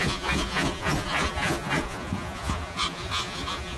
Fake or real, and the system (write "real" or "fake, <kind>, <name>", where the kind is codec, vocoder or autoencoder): fake, vocoder, Vocos